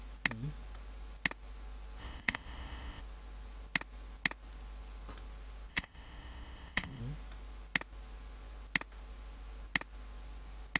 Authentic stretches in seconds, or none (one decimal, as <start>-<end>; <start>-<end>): 0.0-2.0; 3.0-5.7; 7.0-10.8